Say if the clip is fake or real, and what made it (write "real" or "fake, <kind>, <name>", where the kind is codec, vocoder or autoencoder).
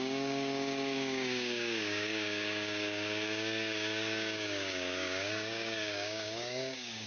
fake, codec, DAC